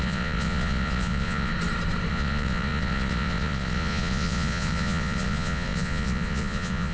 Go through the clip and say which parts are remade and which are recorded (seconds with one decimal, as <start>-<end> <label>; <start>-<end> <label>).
0.0-1.5 remade; 1.5-2.1 recorded; 2.1-6.9 remade